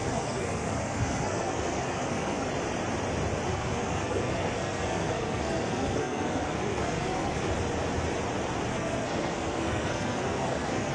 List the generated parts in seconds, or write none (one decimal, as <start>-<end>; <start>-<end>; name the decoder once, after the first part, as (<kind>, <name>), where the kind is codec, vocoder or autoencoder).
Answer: 0.0-2.5 (codec, SNAC); 3.5-7.5; 8.7-10.9